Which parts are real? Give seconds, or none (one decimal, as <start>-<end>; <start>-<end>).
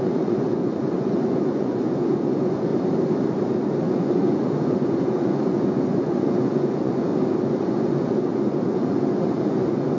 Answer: 2.7-3.8; 7.1-7.6